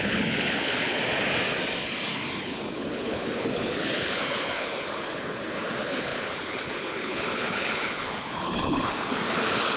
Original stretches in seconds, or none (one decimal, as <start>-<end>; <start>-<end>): 1.0-2.4